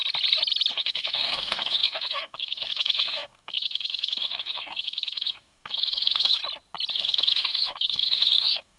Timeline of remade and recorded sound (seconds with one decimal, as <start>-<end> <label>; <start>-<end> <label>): 0.0-0.7 recorded; 0.7-6.4 remade; 6.4-6.9 recorded; 6.9-8.8 remade